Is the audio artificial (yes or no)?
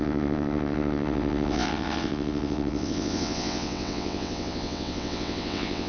yes